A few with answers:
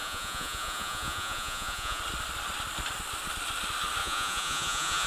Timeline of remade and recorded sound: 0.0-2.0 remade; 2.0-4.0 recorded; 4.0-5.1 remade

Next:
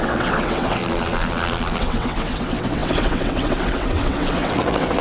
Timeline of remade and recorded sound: 0.0-0.8 remade; 0.8-1.8 recorded; 1.8-5.0 remade

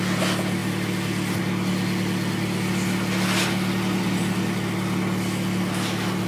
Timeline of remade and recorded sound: 0.0-6.3 recorded

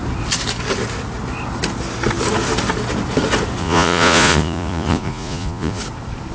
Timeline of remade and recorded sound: 0.0-3.6 recorded; 3.6-5.8 remade; 5.8-6.3 recorded

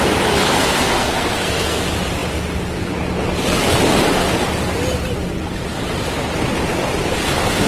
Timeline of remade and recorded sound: 0.0-0.4 recorded; 0.4-1.8 remade; 1.8-7.7 recorded

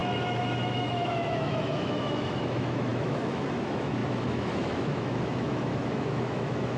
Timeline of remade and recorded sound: 0.0-6.8 remade

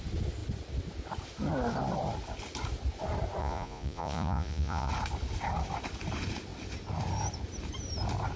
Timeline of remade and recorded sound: 0.0-3.4 recorded; 3.4-4.9 remade; 4.9-8.4 recorded